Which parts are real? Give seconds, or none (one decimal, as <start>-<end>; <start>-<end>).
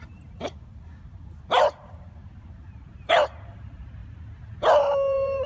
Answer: 4.0-4.8